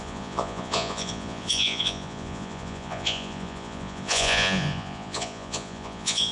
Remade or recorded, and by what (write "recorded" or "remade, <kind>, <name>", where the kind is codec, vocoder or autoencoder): remade, vocoder, Vocos